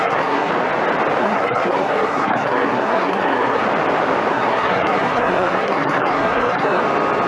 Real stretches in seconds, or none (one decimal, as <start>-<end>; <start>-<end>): 0.5-1.2; 3.6-4.3; 6.8-7.3

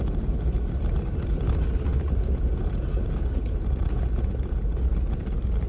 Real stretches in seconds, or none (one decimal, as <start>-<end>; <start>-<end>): 0.0-5.7

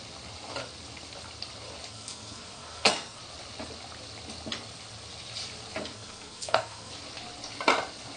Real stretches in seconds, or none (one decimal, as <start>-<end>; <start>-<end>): 0.0-1.9; 3.2-5.8; 6.9-8.2

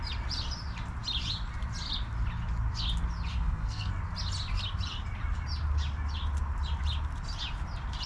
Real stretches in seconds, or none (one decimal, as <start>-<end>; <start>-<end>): 0.0-3.3; 3.9-8.1

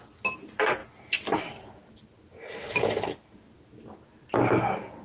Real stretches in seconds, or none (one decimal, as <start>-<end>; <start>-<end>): 0.0-5.0

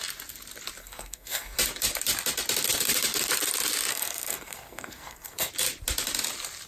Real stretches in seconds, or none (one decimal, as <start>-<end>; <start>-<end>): 0.0-0.8; 1.6-3.9; 5.5-6.7